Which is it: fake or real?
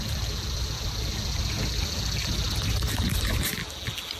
real